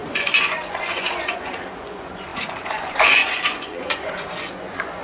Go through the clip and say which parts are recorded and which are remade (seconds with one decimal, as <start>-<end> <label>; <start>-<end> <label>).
0.0-5.0 remade